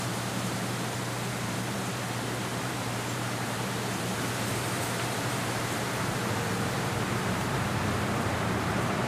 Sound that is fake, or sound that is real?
fake